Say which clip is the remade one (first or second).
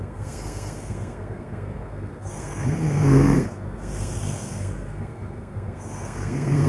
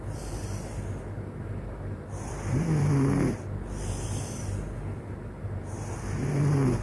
first